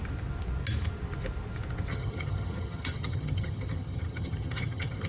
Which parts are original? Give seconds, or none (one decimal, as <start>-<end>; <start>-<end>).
0.0-1.9